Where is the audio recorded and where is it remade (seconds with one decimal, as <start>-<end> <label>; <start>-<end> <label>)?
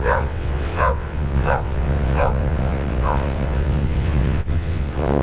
0.0-5.2 remade